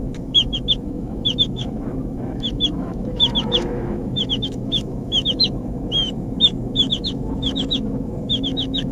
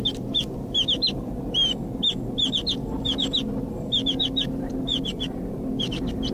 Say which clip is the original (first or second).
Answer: second